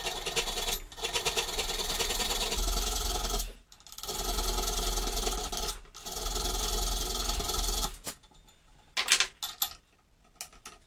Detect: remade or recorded recorded